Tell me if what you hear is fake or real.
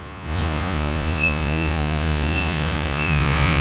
fake